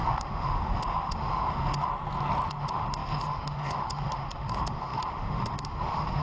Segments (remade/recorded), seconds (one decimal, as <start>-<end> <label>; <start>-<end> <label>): 0.0-1.9 remade; 1.9-2.6 recorded; 2.6-6.2 remade